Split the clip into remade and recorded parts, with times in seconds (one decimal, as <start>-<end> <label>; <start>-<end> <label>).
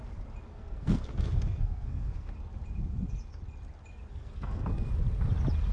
0.0-0.5 recorded; 0.5-2.3 remade; 2.3-4.1 recorded; 4.1-4.9 remade; 4.9-5.7 recorded